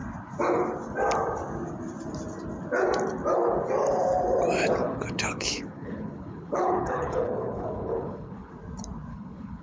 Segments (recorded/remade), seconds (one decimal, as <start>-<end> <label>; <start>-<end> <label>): 0.0-4.8 recorded; 4.8-8.5 remade; 8.5-9.1 recorded; 9.1-9.6 remade